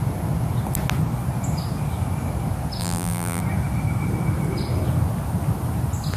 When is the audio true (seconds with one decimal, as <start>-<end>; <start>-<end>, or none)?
0.0-2.8; 3.4-6.2